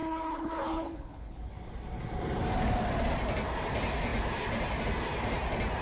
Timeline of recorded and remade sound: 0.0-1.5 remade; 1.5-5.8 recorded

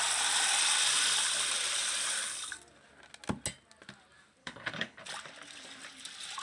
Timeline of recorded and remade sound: 0.0-4.4 recorded; 4.4-5.0 remade; 5.0-6.4 recorded

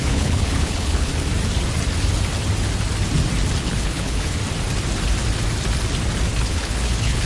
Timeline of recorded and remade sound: 0.0-1.1 remade; 1.1-3.6 recorded; 3.6-4.4 remade; 4.4-6.4 recorded; 6.4-7.3 remade

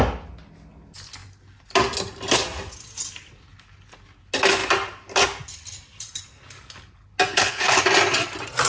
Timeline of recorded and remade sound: 0.0-7.3 recorded; 7.3-7.8 remade; 7.8-8.7 recorded

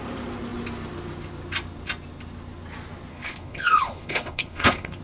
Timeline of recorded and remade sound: 0.0-3.1 recorded; 3.1-5.0 remade

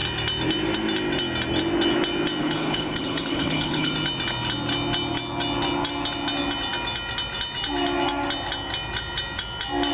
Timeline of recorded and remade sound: 0.0-2.4 recorded; 2.4-3.9 remade; 3.9-9.9 recorded